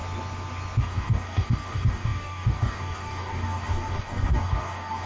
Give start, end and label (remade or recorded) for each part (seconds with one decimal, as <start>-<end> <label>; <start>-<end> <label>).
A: 0.0-0.8 recorded; 0.8-5.1 remade